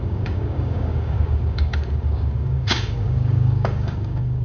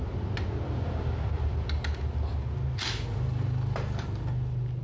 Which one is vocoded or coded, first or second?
first